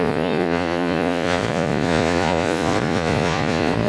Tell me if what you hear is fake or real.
fake